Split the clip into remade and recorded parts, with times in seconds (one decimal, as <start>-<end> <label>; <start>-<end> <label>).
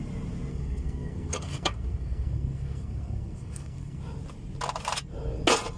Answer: 0.0-0.5 recorded; 0.5-4.0 remade; 4.0-5.8 recorded